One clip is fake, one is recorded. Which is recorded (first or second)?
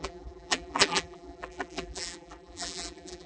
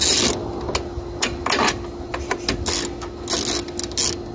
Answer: second